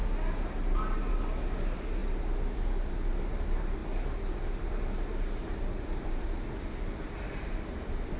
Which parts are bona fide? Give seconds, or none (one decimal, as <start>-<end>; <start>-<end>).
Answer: 0.0-8.2